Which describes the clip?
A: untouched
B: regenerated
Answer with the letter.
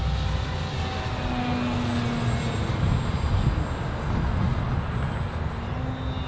A